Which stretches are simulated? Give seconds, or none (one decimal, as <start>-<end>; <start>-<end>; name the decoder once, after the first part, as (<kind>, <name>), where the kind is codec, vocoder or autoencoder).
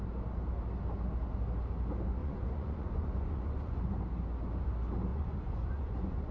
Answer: 2.2-3.8 (vocoder, Vocos); 5.1-6.3